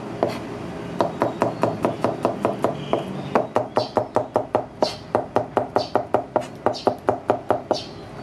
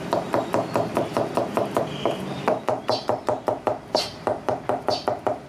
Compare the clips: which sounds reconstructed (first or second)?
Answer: second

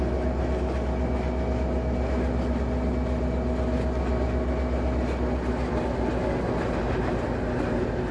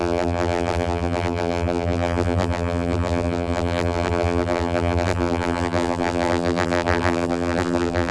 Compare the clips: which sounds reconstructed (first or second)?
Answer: second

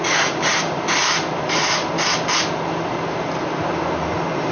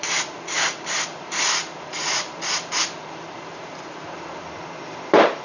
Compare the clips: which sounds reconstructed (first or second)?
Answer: second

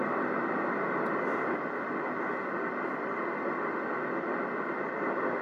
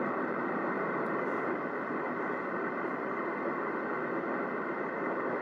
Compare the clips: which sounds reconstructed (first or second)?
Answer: second